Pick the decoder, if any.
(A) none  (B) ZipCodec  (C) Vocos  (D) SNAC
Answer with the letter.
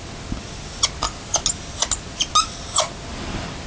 A